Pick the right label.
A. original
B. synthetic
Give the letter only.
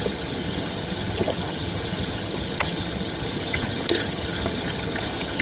B